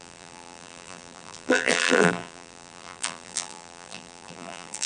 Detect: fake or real fake